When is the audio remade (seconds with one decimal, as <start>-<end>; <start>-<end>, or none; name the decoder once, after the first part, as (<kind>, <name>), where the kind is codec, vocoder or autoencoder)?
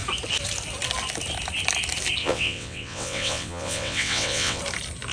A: 2.2-4.6 (vocoder, WaveNeXt)